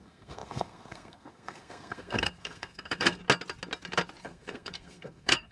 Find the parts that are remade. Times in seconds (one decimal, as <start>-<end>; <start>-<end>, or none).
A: 0.0-3.2; 4.2-5.5

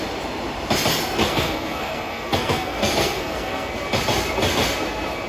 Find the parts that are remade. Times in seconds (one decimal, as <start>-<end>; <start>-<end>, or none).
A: 1.2-3.7

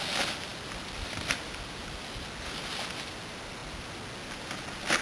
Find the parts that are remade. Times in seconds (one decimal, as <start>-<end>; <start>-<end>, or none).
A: none

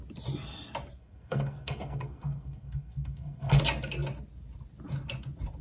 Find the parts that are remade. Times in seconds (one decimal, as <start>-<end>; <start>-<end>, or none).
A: 1.0-3.6

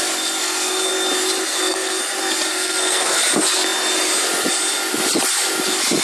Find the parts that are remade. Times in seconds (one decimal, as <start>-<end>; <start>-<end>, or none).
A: 0.4-0.9; 1.5-2.0; 2.5-3.2